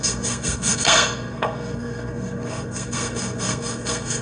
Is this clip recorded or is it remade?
remade